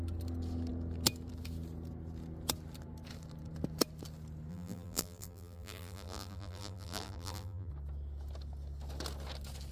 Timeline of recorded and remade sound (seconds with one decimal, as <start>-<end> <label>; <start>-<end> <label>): 0.0-4.5 recorded; 4.5-7.7 remade; 7.7-9.7 recorded